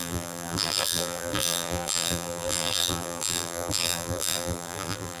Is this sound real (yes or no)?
no